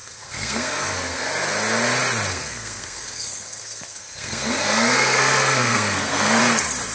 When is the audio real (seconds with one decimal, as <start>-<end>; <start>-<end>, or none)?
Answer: 1.3-2.3; 6.4-6.9